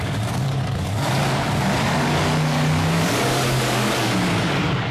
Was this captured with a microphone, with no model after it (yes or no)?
no